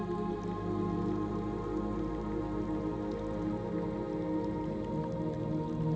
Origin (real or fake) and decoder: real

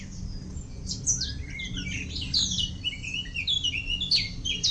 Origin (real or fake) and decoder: real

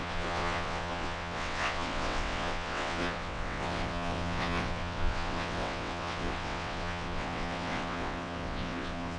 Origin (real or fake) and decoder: fake, vocoder, WaveNeXt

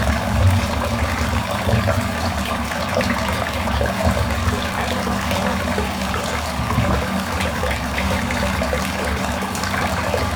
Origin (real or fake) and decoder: fake, codec, DAC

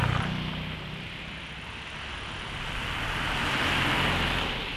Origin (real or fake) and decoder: real